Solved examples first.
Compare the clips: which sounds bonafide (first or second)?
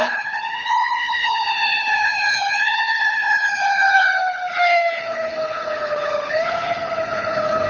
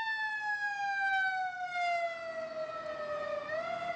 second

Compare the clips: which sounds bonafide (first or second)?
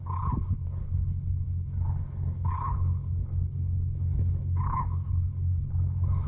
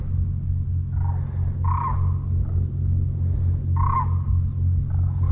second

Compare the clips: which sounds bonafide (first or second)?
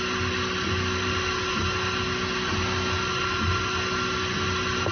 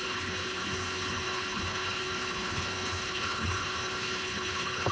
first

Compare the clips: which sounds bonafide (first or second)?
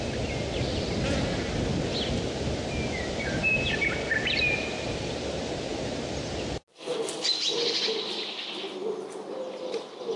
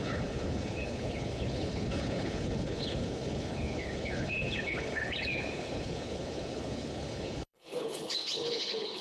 first